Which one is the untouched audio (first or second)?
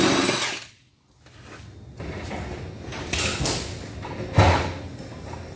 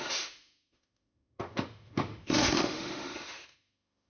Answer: first